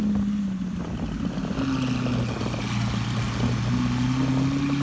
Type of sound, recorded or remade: recorded